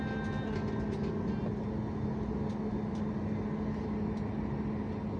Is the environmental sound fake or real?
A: real